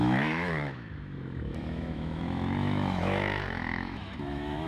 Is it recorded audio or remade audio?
remade